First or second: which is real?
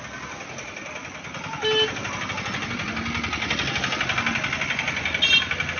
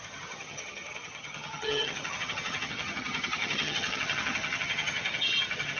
first